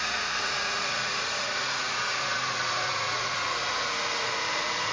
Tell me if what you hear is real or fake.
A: fake